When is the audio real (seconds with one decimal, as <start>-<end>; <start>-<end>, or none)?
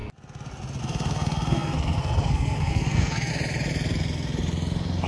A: 0.0-0.8; 3.3-5.1